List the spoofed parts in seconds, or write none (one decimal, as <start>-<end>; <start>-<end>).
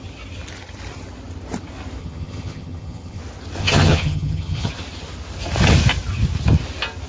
2.0-3.2; 3.6-4.7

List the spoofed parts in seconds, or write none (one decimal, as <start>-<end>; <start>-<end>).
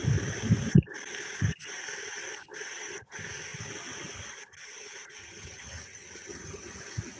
5.2-6.8